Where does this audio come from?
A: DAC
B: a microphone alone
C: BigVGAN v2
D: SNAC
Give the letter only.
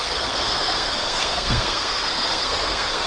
D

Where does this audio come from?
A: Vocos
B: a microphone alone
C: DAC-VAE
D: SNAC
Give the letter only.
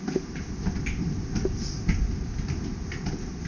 B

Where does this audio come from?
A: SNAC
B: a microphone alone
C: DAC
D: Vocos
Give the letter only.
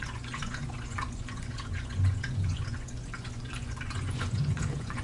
D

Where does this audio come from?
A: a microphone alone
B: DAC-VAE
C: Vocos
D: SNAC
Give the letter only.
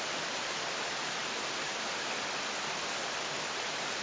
A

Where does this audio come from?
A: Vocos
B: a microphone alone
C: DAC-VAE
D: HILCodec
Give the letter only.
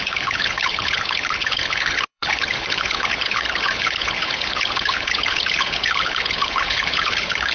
D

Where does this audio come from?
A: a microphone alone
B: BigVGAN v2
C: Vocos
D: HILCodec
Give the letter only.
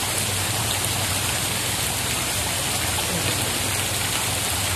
A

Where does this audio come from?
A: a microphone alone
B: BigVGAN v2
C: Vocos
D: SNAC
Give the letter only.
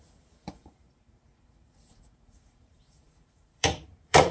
C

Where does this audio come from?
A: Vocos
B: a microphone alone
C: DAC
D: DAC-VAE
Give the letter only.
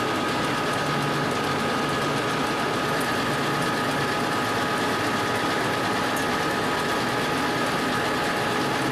B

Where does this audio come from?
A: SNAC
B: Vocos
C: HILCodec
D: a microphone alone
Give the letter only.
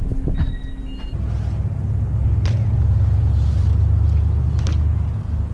D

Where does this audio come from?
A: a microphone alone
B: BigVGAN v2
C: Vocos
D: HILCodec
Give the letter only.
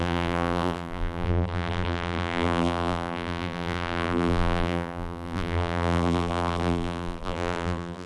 B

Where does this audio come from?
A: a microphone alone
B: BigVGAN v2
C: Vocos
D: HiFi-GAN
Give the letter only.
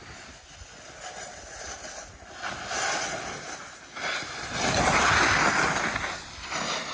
A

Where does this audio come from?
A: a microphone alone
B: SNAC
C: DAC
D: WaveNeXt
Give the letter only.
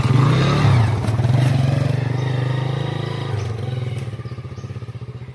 A